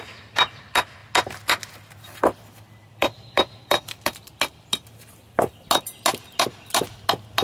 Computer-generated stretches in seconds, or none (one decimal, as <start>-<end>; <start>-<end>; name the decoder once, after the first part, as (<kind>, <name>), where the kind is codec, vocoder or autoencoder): 2.8-4.3 (vocoder, BigVGAN v2)